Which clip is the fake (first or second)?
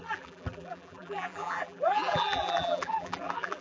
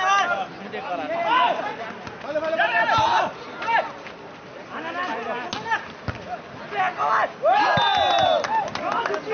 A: first